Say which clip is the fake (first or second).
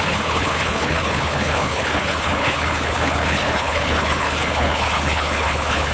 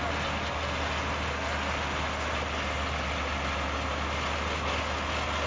first